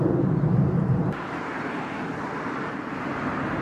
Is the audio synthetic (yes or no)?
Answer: yes